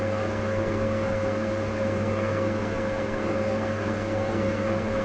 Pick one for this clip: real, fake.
fake